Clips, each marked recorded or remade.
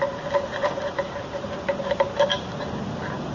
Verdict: recorded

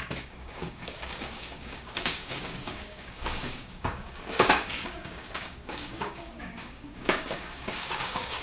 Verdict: remade